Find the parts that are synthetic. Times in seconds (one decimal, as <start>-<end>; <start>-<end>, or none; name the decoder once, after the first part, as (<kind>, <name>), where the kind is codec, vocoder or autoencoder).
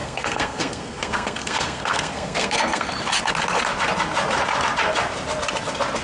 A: 0.0-2.9 (codec, SNAC)